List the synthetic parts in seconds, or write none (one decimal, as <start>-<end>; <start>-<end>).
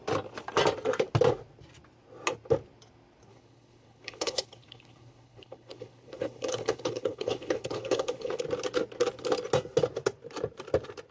3.3-8.4